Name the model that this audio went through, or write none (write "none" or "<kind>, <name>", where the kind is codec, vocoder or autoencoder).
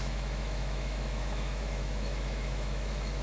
autoencoder, DAC-VAE